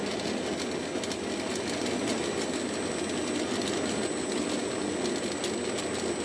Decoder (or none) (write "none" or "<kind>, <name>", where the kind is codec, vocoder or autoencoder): none